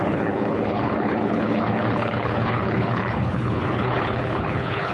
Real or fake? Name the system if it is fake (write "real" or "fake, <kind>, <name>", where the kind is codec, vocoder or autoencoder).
fake, codec, HILCodec